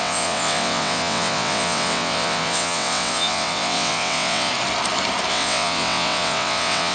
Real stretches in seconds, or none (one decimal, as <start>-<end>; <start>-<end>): 4.5-5.3